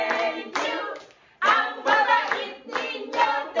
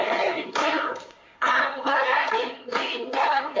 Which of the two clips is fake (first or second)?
second